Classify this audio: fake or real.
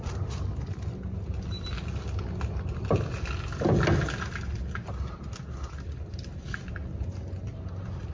real